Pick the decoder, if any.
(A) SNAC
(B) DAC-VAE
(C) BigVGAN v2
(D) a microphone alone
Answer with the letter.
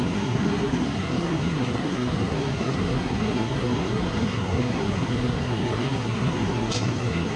A